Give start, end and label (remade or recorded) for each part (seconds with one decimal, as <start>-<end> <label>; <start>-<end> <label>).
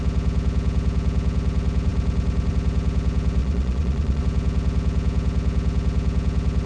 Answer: 0.0-3.4 recorded; 3.4-4.2 remade; 4.2-6.7 recorded